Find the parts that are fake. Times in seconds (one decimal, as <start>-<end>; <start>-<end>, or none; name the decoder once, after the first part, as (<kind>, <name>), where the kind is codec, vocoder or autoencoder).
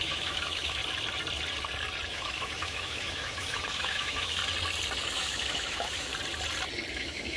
0.0-0.8 (autoencoder, DAC-VAE); 2.1-4.4; 5.0-6.1; 6.9-7.4